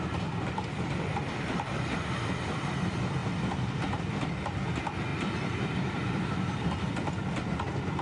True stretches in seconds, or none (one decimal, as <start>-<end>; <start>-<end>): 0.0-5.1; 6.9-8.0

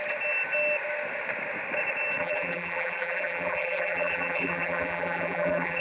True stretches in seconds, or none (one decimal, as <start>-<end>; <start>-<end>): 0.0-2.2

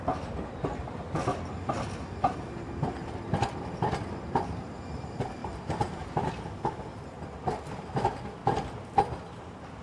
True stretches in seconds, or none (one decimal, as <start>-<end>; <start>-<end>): 0.0-5.4; 6.5-9.8

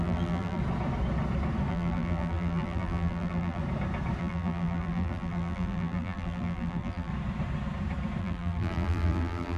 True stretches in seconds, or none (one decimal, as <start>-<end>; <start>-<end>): 0.6-1.7; 3.6-4.2; 7.1-8.2

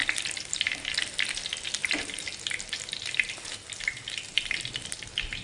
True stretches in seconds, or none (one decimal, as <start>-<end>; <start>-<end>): 0.0-1.8; 3.3-5.4